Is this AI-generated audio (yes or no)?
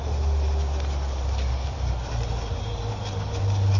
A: no